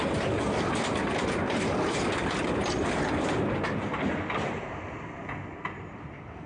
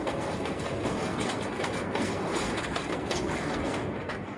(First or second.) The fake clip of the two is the second